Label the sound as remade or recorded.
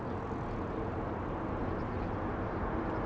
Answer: recorded